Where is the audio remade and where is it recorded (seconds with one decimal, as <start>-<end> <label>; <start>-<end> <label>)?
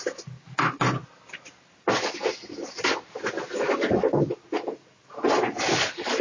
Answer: 0.0-6.2 recorded